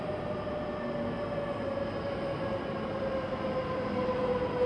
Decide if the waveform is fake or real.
real